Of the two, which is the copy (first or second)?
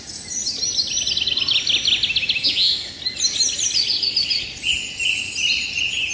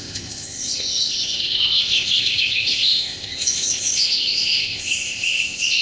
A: second